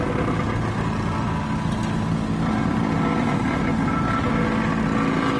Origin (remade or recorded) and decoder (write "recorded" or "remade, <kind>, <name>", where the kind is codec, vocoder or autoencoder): recorded